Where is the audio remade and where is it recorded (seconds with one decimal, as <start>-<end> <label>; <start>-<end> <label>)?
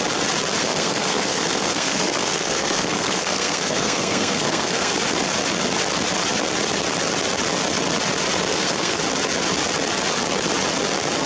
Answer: 0.0-0.6 recorded; 0.6-4.9 remade; 4.9-8.5 recorded; 8.5-9.0 remade; 9.0-11.3 recorded